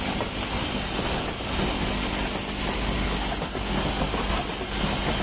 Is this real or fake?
real